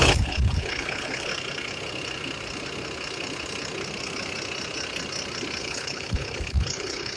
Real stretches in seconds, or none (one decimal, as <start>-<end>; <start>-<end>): 1.3-5.6